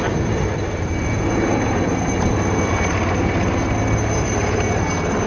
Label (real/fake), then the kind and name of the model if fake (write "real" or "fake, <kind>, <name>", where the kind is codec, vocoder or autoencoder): real